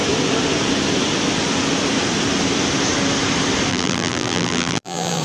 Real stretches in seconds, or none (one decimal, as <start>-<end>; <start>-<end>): 0.0-3.7